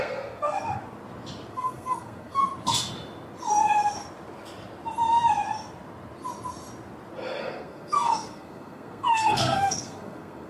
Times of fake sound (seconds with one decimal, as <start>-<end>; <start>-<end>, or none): 0.0-0.8; 1.5-2.4; 7.4-10.5